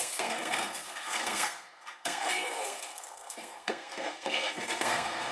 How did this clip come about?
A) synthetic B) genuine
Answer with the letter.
A